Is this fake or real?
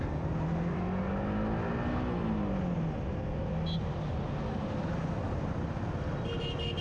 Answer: real